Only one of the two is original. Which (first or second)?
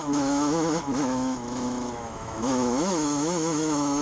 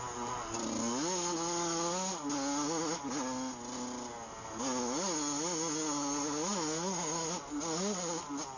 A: second